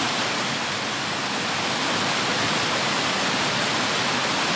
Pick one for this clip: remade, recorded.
recorded